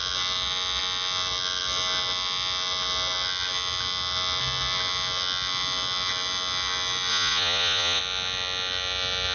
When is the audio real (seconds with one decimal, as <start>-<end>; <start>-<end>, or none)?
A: 0.0-7.1; 8.0-9.3